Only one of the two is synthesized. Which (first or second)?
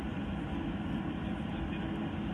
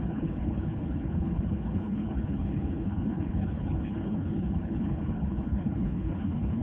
second